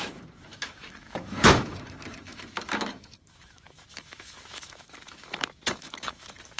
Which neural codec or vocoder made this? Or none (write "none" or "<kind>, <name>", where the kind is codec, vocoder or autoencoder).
autoencoder, DAC-VAE